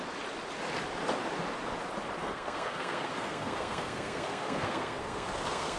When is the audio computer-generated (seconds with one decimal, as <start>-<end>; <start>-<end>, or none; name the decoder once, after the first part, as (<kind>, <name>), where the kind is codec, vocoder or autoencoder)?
2.2-5.8 (codec, SNAC)